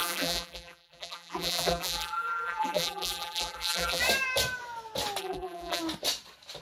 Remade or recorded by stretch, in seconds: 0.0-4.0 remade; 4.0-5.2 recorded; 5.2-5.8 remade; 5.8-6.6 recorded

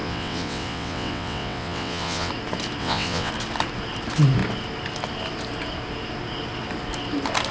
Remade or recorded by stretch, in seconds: 0.0-2.3 remade; 2.3-2.8 recorded; 2.8-3.3 remade; 3.3-7.5 recorded

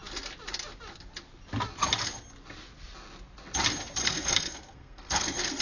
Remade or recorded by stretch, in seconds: 0.0-4.0 recorded; 4.0-5.6 remade

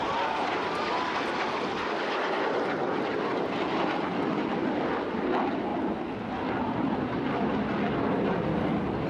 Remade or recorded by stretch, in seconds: 0.0-9.1 recorded